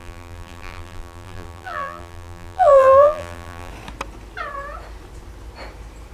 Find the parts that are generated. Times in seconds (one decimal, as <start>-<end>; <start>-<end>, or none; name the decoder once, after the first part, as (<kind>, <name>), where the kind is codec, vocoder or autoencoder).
0.0-3.7 (vocoder, BigVGAN v2)